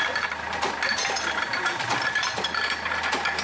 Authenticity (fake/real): real